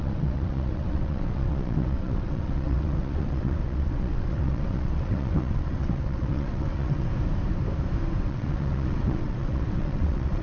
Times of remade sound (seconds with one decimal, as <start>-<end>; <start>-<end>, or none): 0.0-7.1; 8.2-10.4

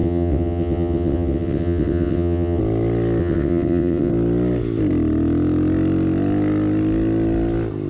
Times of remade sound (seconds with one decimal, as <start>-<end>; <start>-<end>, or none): 0.0-2.6; 3.2-4.1

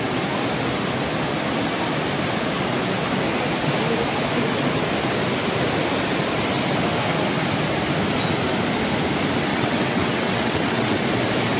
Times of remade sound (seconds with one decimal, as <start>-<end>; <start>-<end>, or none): 9.5-11.0